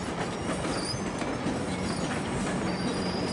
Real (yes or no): yes